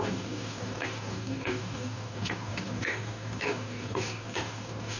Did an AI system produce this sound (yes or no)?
yes